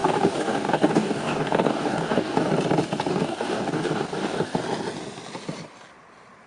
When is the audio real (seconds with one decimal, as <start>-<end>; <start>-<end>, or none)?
2.5-3.1; 4.6-6.5